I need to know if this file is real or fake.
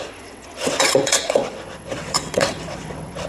fake